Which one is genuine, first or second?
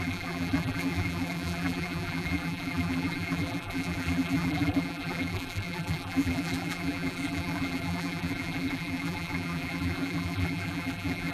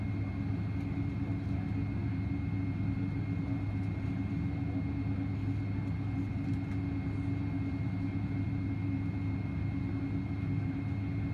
second